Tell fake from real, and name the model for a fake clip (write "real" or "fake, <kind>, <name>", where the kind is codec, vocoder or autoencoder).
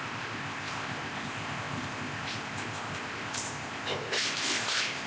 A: fake, codec, ZipCodec